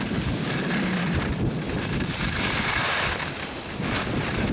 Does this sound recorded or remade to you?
recorded